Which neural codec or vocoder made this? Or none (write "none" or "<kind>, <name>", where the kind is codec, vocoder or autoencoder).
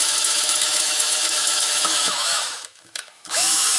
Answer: autoencoder, DAC-VAE